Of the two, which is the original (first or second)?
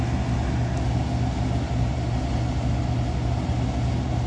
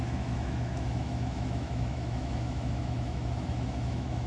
first